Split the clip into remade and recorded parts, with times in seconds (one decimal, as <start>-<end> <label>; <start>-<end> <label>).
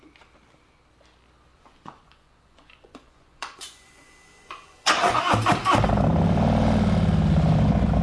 0.0-1.5 recorded; 1.5-5.2 remade; 5.2-8.0 recorded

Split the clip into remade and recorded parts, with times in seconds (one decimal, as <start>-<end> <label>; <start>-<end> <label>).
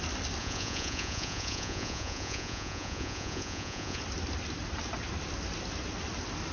0.0-0.4 recorded; 0.4-4.0 remade; 4.0-6.5 recorded